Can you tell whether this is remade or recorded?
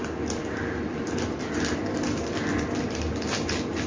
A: recorded